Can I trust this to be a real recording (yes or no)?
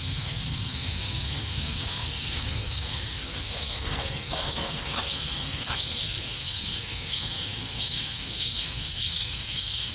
no